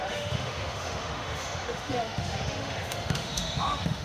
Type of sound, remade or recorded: remade